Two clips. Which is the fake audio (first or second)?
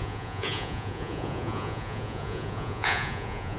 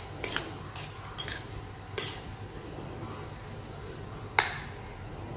first